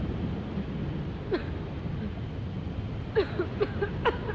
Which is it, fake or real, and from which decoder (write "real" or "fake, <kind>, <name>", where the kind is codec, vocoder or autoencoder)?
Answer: real